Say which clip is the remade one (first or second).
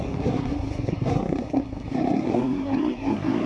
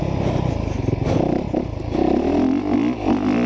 first